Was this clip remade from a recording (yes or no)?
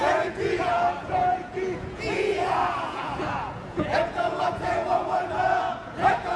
yes